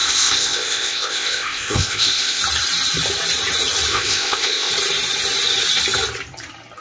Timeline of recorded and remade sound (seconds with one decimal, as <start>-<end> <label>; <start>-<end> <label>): 0.0-2.4 remade; 2.4-3.9 recorded; 3.9-4.7 remade; 4.7-6.8 recorded